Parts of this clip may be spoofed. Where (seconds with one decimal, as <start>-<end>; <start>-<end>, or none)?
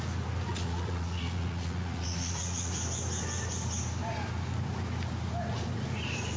0.5-2.7